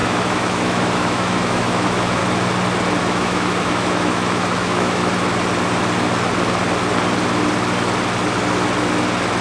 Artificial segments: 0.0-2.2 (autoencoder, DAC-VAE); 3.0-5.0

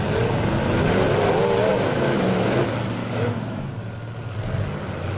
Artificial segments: 1.7-2.6 (autoencoder, DAC-VAE); 3.0-3.7

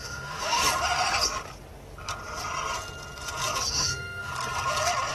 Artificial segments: 0.0-0.6 (autoencoder, DAC-VAE); 3.7-4.3

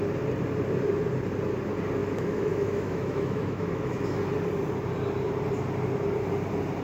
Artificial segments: 2.0-4.2 (autoencoder, DAC-VAE)

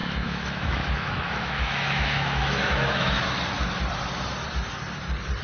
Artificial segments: 0.0-3.2 (autoencoder, DAC-VAE)

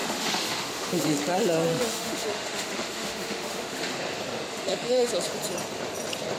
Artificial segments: 0.0-1.0 (autoencoder, DAC-VAE); 1.7-3.9; 4.5-5.1

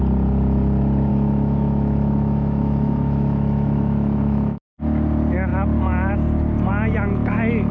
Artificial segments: 1.1-4.6 (autoencoder, DAC-VAE)